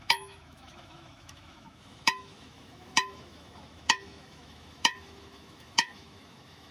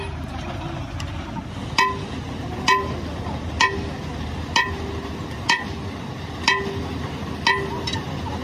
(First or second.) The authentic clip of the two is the second